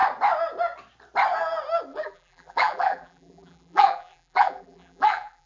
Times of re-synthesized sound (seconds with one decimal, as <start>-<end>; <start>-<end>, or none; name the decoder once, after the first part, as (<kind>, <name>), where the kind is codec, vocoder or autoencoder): 1.9-5.5 (vocoder, BigVGAN v2)